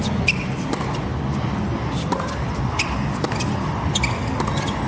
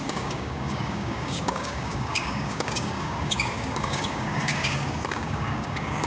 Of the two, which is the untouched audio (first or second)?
first